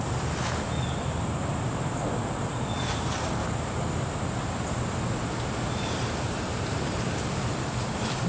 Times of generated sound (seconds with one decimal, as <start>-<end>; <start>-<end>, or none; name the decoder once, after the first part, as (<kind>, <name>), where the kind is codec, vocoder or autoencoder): 1.4-2.5 (vocoder, BigVGAN v2); 3.4-7.5